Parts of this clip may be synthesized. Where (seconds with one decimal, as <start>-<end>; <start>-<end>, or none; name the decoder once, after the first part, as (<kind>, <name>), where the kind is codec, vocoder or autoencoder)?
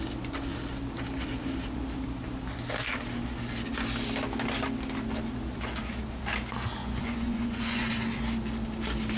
6.8-7.9 (vocoder, Vocos)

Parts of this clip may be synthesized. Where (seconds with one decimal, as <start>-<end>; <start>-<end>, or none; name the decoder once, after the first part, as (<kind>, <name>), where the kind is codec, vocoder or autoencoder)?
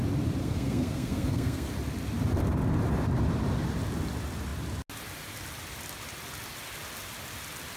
0.4-1.7 (codec, SNAC)